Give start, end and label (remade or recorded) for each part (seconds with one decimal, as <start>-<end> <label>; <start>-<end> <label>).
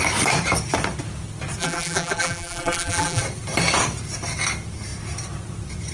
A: 0.0-1.6 recorded; 1.6-3.2 remade; 3.2-5.9 recorded